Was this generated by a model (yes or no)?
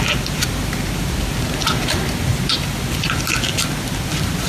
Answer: no